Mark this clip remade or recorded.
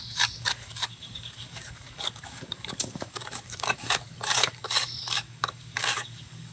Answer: remade